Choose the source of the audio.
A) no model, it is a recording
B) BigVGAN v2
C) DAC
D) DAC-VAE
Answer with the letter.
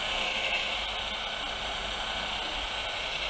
A